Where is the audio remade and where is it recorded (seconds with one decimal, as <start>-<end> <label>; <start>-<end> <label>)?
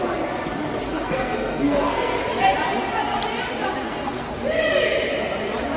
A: 0.0-0.9 recorded; 0.9-2.2 remade; 2.2-3.8 recorded; 3.8-4.3 remade; 4.3-5.8 recorded